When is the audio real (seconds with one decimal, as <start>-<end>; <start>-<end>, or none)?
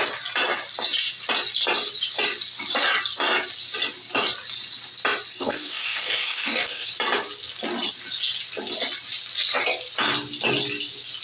0.0-5.3; 6.9-11.2